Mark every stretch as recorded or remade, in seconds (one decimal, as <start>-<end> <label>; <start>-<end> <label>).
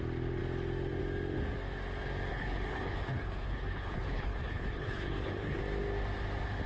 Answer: 0.0-2.3 recorded; 2.3-5.6 remade; 5.6-6.7 recorded